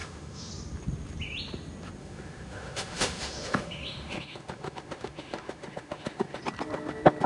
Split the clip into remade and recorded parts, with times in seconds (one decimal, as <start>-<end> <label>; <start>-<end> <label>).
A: 0.0-0.5 remade; 0.5-2.0 recorded; 2.0-6.4 remade; 6.4-7.3 recorded